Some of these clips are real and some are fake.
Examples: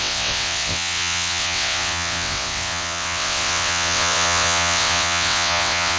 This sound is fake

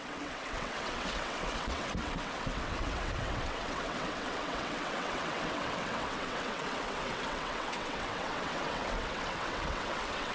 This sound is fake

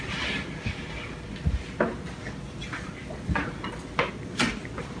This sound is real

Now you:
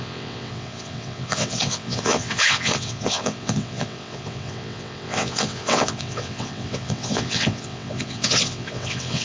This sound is fake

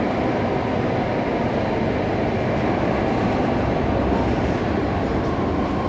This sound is real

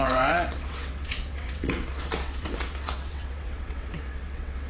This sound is fake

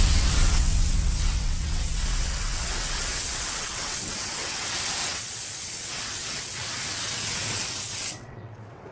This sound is fake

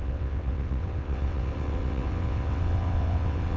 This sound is fake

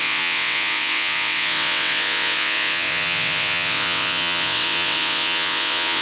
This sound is fake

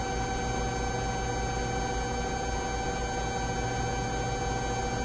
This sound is real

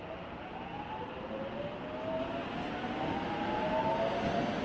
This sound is real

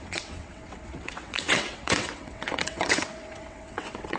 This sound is fake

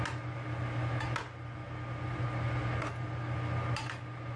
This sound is real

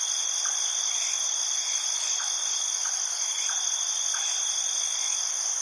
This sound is real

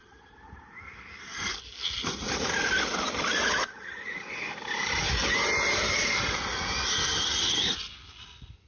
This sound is real